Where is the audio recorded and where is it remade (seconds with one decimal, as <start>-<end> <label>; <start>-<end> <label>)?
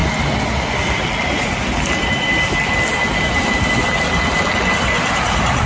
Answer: 0.0-5.7 recorded